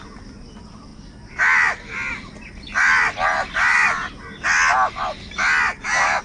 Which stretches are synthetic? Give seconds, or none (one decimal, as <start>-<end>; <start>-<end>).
none